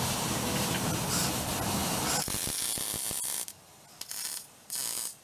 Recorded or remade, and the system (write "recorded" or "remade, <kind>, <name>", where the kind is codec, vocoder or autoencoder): recorded